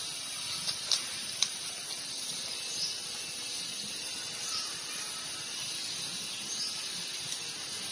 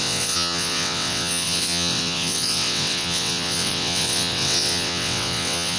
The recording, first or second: first